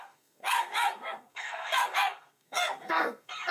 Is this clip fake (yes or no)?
yes